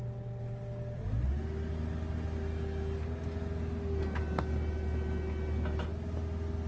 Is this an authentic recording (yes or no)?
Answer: yes